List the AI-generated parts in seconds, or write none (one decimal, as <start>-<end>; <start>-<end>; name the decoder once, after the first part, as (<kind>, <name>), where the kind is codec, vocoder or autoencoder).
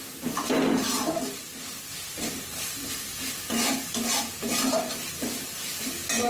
0.0-1.5 (vocoder, BigVGAN v2); 2.1-3.1; 4.7-5.7